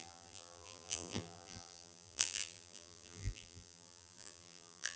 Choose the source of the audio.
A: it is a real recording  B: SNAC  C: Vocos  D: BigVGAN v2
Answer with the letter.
D